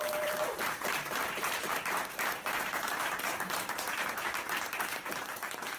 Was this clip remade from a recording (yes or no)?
yes